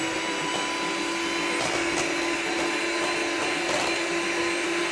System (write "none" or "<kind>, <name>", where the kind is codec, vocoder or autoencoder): none